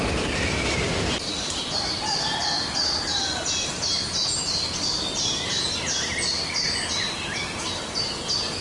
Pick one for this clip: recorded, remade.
remade